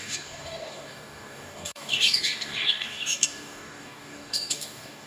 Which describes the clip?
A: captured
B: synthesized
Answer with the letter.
B